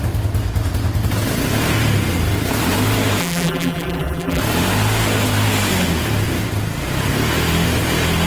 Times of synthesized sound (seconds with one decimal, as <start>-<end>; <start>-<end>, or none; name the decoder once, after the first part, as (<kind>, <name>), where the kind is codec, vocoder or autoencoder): 3.2-4.4 (vocoder, BigVGAN v2)